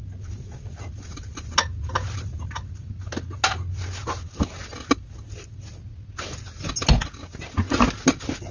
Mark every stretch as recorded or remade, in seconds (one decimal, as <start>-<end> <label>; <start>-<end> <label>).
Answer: 0.0-8.5 recorded